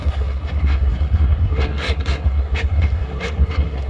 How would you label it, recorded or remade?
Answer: remade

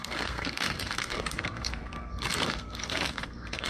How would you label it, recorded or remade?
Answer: remade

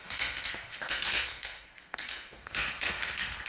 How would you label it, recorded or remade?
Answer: remade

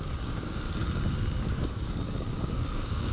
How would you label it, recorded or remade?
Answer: remade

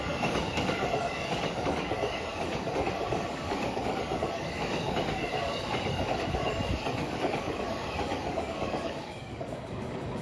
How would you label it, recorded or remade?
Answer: remade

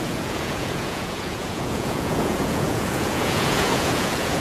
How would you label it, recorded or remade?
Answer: remade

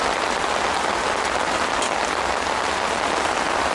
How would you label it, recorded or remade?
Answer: recorded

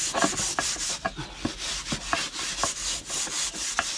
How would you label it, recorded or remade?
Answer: recorded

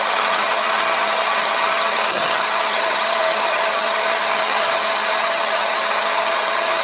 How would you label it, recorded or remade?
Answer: remade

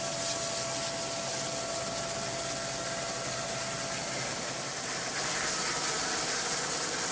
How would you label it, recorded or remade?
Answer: recorded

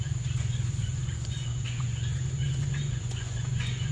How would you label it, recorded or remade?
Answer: remade